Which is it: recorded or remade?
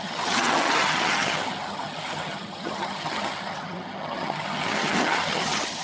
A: remade